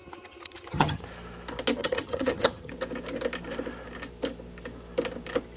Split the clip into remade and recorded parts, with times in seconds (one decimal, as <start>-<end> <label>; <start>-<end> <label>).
0.0-1.0 remade; 1.0-1.8 recorded; 1.8-2.7 remade; 2.7-5.6 recorded